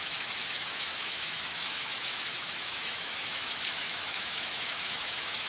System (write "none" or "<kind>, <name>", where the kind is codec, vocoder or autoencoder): autoencoder, DAC-VAE